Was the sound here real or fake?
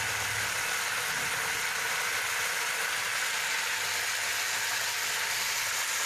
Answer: real